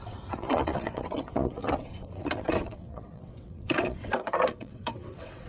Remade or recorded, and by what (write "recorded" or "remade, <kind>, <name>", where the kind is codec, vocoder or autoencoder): remade, vocoder, WaveNeXt